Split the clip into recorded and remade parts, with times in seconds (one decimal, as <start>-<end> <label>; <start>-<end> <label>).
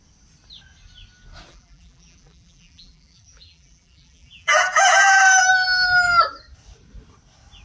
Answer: 0.0-1.5 recorded; 1.5-5.2 remade; 5.2-7.6 recorded